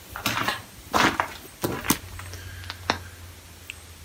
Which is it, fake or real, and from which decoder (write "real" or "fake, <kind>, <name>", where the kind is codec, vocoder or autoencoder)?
real